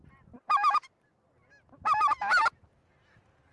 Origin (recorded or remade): recorded